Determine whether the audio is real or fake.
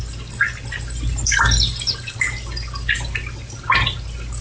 real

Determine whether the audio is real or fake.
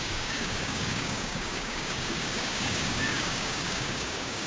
fake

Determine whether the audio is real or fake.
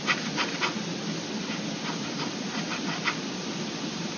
real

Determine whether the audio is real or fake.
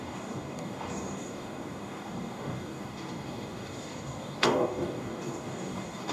fake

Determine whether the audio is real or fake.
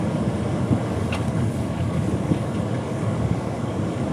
fake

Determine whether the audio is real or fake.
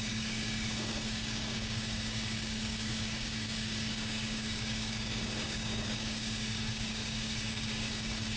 fake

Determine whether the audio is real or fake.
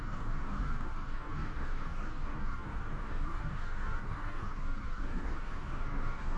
fake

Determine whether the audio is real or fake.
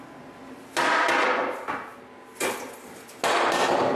real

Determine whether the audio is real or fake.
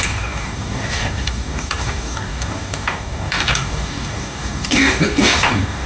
fake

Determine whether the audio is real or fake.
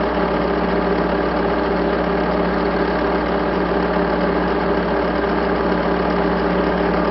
real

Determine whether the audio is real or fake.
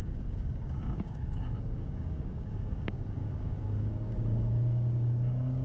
fake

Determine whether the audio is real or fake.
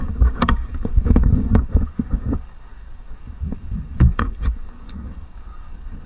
fake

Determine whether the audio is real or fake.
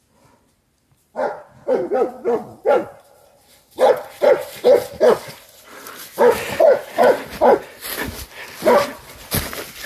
real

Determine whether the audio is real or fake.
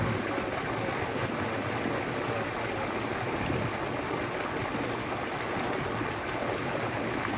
real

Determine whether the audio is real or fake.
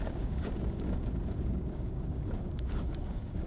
fake